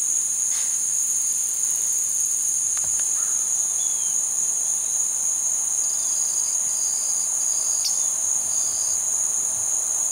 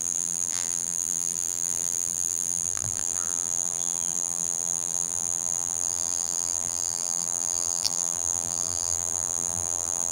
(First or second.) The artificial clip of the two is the second